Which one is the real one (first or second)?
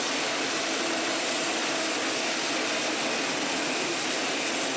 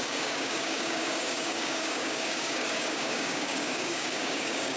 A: first